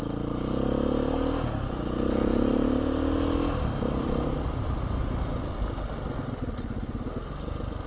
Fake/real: real